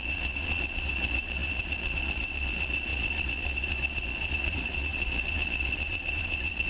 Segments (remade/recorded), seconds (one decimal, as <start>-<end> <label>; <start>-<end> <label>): 0.0-6.7 remade